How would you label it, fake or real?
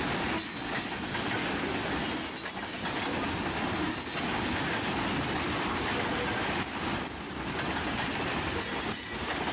real